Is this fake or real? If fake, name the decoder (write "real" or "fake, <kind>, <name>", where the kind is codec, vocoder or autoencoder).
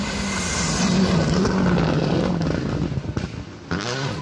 real